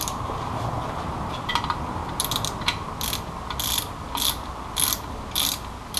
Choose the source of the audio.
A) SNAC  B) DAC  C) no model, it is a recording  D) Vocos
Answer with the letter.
C